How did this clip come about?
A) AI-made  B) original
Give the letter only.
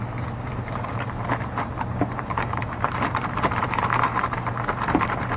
A